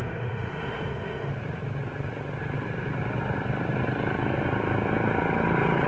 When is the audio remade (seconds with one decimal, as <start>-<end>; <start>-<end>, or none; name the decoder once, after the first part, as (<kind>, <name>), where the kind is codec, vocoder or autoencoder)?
0.0-1.3 (autoencoder, DAC-VAE)